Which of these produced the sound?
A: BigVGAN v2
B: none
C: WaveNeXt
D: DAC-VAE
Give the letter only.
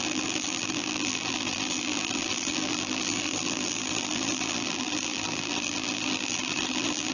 A